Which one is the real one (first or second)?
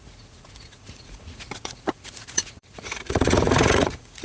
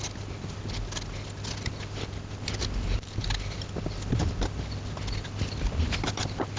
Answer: second